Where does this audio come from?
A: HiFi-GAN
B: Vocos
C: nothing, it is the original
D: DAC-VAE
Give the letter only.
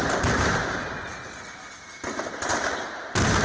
C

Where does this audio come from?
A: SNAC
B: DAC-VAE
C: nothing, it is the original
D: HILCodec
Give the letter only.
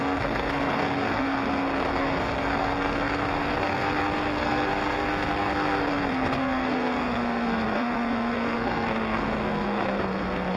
A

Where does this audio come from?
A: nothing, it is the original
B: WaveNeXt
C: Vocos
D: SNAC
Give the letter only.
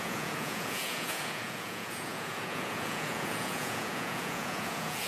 C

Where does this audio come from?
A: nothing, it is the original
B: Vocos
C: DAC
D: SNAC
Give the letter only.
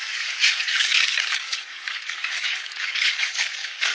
C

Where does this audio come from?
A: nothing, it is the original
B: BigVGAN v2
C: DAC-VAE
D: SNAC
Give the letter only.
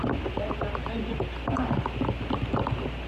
A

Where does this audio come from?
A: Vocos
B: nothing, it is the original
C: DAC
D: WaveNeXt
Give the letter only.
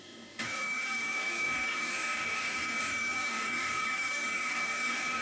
C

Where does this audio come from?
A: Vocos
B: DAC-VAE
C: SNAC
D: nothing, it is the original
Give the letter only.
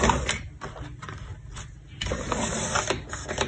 D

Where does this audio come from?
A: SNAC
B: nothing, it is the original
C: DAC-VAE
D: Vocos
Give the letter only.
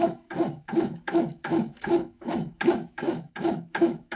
C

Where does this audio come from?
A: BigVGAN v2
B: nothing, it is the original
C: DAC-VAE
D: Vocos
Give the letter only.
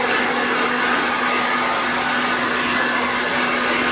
B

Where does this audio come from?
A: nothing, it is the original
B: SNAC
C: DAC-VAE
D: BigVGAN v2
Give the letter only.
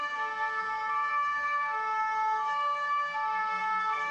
B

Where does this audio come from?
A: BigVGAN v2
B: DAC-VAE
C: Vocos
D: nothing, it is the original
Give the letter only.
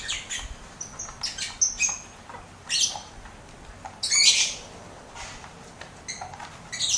D